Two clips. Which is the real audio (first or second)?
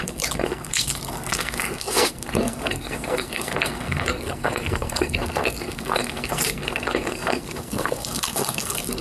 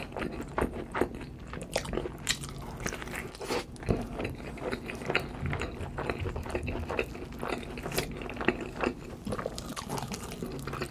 second